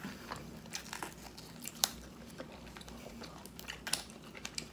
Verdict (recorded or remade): remade